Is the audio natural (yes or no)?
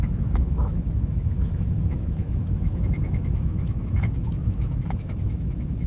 no